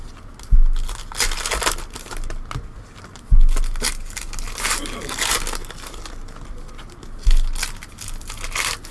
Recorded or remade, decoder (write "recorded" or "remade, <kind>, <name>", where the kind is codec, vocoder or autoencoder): recorded